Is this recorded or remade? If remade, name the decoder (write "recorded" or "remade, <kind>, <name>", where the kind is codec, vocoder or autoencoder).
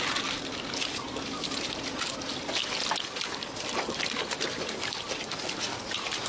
recorded